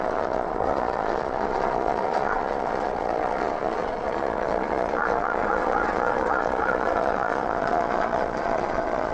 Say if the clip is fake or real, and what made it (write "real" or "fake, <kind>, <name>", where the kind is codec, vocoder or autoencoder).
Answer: fake, vocoder, Vocos